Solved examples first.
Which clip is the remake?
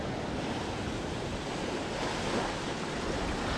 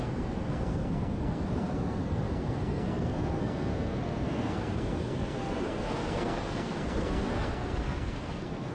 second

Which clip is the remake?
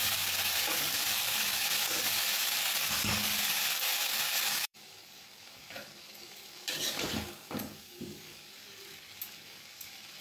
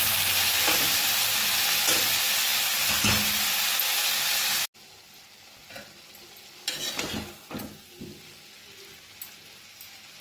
first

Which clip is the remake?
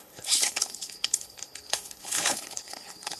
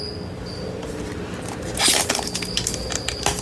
first